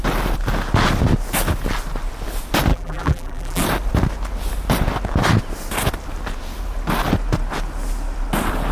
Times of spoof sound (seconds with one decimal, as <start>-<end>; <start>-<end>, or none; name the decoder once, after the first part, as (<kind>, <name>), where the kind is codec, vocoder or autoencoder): 2.7-3.6 (vocoder, BigVGAN v2)